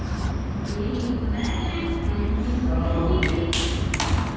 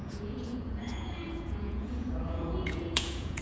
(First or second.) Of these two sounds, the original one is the first